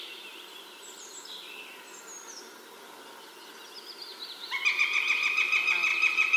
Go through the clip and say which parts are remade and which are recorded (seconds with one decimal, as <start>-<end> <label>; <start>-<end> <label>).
0.0-4.1 recorded; 4.1-5.3 remade; 5.3-5.9 recorded; 5.9-6.4 remade